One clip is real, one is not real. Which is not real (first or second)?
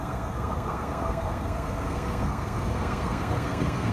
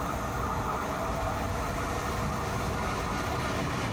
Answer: first